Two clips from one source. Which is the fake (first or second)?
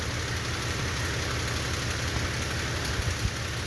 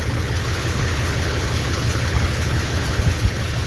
second